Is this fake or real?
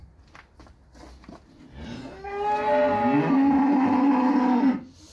real